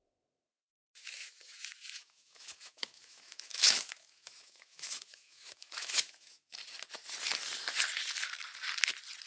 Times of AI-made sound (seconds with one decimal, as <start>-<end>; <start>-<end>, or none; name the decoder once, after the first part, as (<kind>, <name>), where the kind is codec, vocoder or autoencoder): 0.0-6.6 (autoencoder, DAC-VAE)